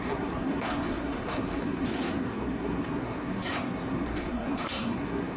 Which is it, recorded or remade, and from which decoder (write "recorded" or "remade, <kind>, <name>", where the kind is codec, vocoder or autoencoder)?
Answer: remade, codec, SNAC